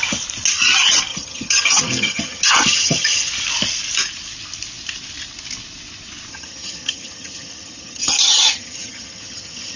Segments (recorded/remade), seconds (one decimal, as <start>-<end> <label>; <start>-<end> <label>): 0.0-1.1 recorded; 1.1-3.3 remade; 3.3-6.3 recorded; 6.3-9.8 remade